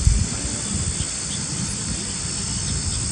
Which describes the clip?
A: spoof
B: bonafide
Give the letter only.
B